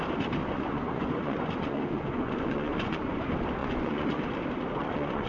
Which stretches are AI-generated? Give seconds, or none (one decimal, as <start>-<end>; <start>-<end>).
0.4-3.2; 3.6-4.2; 4.8-5.3